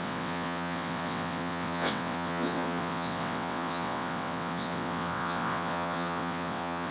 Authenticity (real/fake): fake